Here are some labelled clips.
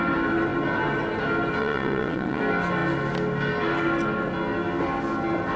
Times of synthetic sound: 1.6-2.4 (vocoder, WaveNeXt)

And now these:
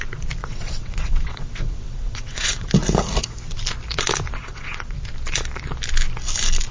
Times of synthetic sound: 0.4-2.7 (vocoder, WaveNeXt); 4.4-5.0

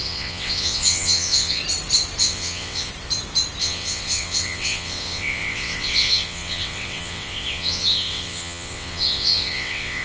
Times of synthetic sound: 0.0-1.6 (vocoder, WaveNeXt); 2.2-2.9; 3.6-10.0